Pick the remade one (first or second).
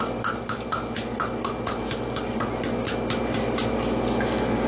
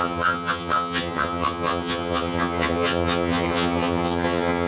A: second